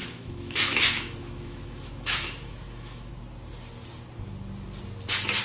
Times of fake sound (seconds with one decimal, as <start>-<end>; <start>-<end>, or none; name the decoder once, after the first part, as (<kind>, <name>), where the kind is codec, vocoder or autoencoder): 0.0-3.1 (autoencoder, DAC-VAE)

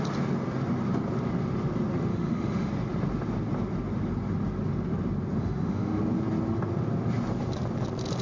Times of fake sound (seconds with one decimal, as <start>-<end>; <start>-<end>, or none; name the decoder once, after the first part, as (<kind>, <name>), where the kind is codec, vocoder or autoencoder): 2.1-2.7 (autoencoder, DAC-VAE); 5.4-6.0

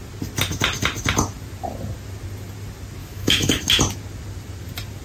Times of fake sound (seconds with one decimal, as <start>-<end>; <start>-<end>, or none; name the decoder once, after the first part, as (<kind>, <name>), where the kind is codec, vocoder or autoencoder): 3.0-3.6 (autoencoder, DAC-VAE)

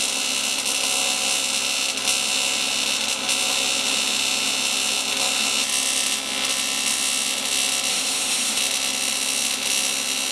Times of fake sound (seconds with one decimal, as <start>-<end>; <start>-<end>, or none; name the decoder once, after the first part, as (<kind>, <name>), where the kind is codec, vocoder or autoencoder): 7.9-8.6 (autoencoder, DAC-VAE)

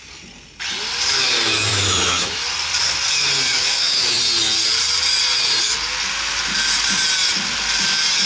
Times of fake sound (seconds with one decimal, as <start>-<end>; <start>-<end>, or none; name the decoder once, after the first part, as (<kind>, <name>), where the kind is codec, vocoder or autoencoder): 1.7-2.4 (autoencoder, DAC-VAE); 3.5-4.2

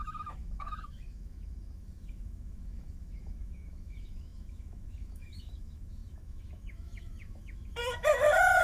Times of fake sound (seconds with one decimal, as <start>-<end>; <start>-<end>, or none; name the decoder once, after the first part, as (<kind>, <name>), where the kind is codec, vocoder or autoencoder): 0.0-8.6 (autoencoder, DAC-VAE)